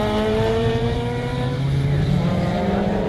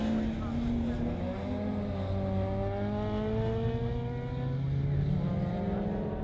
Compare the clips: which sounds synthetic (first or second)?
first